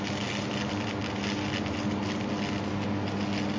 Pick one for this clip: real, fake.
real